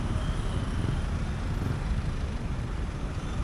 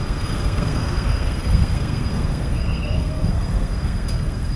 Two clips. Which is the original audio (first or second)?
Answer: first